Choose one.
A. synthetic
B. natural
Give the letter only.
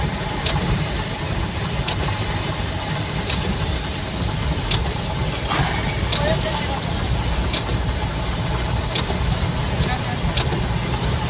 B